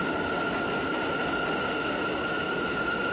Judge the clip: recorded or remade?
recorded